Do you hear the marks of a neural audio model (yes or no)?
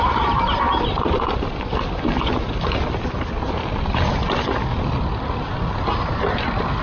no